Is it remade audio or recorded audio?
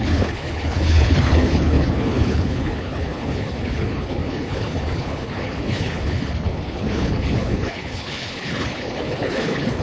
remade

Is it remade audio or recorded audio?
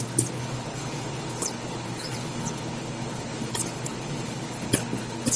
remade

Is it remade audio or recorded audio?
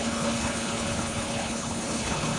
remade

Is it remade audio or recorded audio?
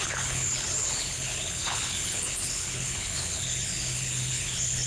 remade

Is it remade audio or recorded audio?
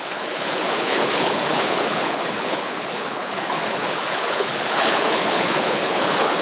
remade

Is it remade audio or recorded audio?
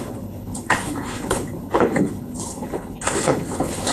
remade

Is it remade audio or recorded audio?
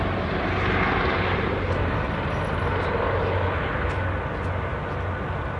recorded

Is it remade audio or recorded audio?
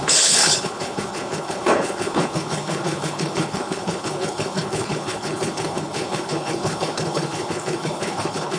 remade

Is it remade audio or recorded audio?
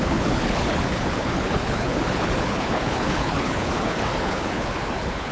remade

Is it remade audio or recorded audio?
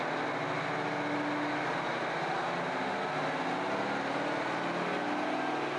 recorded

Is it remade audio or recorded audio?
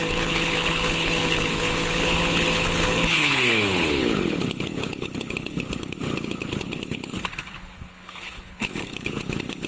remade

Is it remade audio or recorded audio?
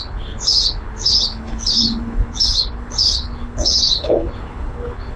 remade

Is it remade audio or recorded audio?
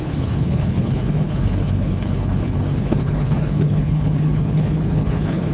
remade